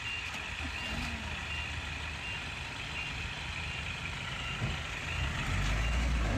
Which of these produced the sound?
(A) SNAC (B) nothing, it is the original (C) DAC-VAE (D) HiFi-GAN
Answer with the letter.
B